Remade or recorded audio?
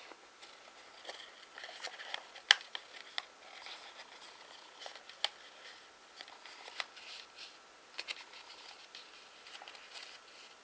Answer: recorded